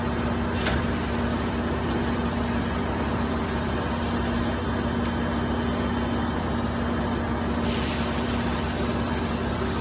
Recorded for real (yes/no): yes